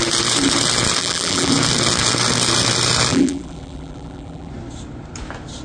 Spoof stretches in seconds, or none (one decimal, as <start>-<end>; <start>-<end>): 1.0-1.5; 3.1-4.5